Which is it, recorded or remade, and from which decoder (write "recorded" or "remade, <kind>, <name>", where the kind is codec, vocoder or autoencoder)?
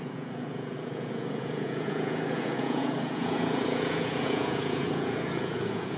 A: remade, vocoder, Vocos